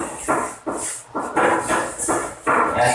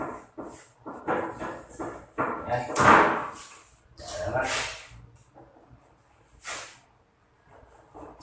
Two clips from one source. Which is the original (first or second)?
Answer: first